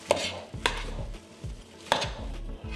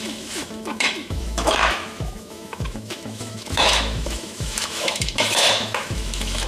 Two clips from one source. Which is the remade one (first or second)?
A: second